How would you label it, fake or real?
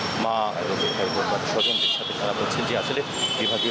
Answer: fake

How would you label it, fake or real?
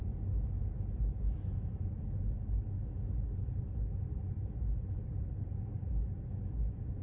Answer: real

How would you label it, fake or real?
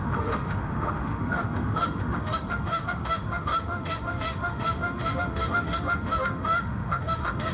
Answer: fake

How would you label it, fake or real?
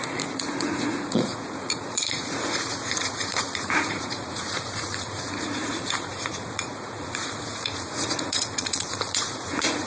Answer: fake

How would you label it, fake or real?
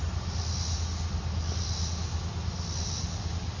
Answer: real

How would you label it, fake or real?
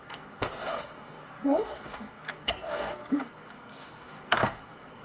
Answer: fake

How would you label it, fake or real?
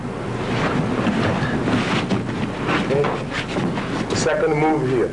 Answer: real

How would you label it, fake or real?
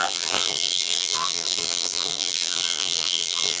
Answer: fake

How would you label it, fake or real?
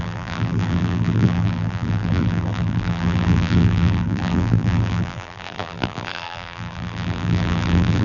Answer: fake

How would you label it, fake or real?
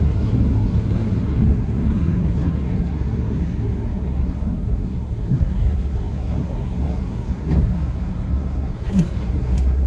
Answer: fake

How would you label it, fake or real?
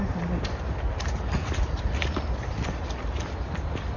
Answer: real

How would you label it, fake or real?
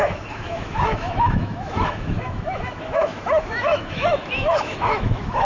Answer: fake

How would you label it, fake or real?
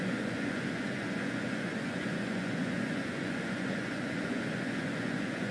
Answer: fake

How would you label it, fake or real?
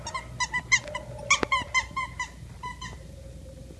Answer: real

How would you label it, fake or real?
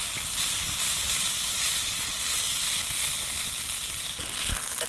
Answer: real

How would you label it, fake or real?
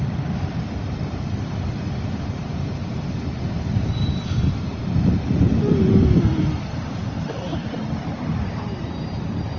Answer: fake